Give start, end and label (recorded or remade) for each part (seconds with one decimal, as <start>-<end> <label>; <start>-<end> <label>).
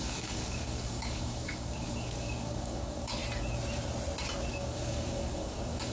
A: 0.0-3.2 remade; 3.2-4.5 recorded; 4.5-5.9 remade